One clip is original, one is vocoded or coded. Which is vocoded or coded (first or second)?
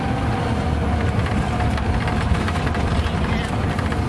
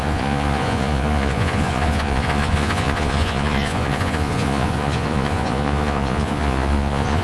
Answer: second